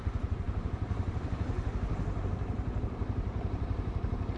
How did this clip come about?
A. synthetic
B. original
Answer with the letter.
A